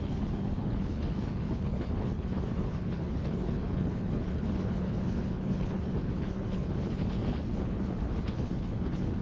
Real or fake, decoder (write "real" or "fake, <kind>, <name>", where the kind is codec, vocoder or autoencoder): fake, codec, HILCodec